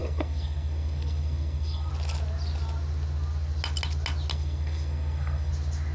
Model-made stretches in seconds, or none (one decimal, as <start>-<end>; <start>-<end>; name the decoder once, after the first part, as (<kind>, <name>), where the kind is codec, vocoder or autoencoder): 0.0-1.9 (codec, SNAC); 4.3-5.5